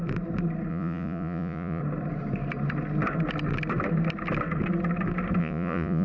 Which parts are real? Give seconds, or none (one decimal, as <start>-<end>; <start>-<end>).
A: 0.0-0.7; 1.8-5.4